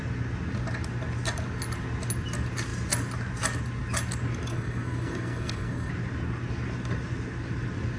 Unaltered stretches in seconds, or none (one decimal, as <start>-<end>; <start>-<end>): 0.0-4.5; 5.9-8.0